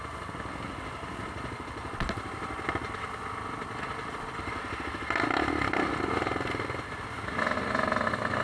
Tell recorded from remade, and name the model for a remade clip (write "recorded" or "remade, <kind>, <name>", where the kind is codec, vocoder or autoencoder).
recorded